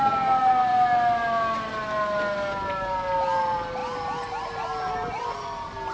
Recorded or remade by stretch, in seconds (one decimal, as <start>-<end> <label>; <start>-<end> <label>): 0.0-5.9 recorded